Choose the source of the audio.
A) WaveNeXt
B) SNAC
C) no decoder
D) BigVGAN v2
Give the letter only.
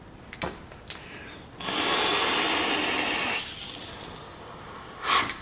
C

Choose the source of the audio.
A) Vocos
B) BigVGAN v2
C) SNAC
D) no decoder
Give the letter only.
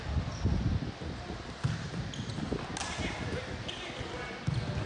D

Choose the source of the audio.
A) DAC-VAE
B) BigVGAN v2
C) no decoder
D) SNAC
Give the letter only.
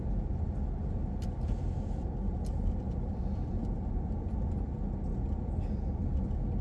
C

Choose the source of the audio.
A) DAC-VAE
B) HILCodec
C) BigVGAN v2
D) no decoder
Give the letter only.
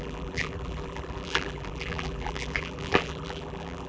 C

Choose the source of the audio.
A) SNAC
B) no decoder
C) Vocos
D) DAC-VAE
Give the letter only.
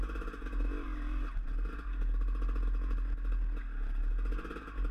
B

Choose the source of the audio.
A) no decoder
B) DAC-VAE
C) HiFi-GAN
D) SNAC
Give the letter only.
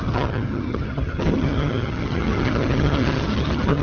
C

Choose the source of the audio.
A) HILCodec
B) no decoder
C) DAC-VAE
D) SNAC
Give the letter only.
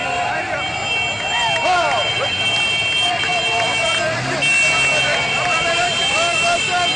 B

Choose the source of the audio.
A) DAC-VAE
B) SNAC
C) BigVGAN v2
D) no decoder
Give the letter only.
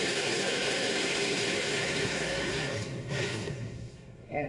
B